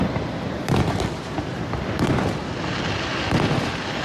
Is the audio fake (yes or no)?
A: yes